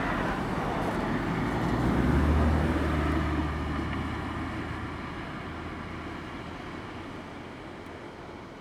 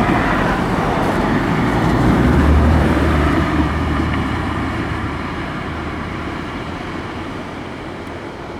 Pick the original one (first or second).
first